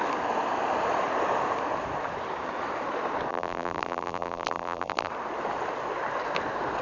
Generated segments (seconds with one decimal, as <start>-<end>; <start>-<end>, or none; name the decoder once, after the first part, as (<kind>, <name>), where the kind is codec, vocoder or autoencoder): 3.3-5.1 (vocoder, BigVGAN v2)